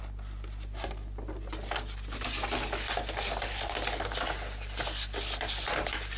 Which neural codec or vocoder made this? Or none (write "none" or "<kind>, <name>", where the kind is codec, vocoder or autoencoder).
none